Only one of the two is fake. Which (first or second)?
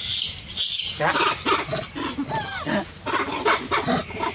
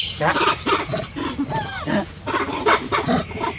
second